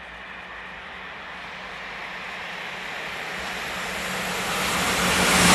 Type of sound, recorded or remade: recorded